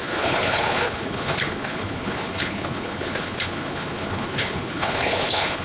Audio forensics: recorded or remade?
remade